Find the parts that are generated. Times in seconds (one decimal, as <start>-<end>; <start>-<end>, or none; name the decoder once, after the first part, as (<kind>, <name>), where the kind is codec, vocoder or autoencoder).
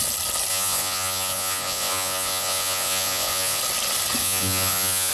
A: 0.5-3.6 (vocoder, Vocos); 4.2-5.1